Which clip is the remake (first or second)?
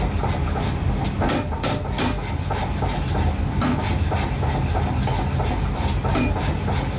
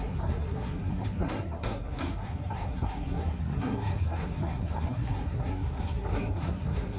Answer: second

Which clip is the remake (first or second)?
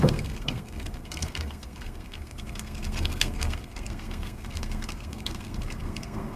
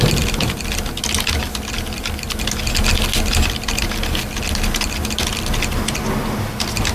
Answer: first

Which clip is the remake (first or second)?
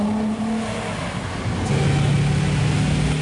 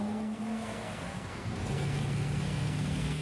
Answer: second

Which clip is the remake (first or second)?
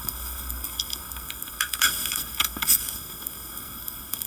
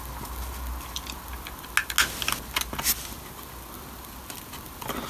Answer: first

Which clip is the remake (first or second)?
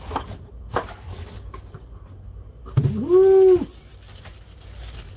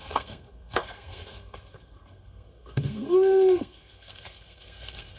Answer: second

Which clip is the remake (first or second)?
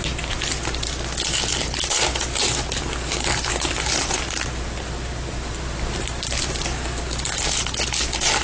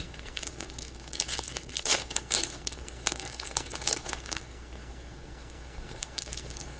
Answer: second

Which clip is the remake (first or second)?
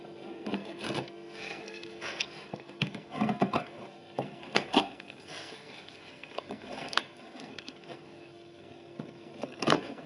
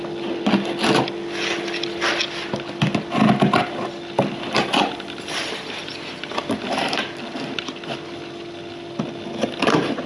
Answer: first